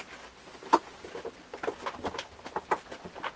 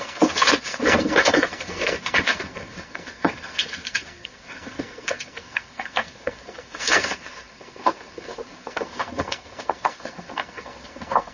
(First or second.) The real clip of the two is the first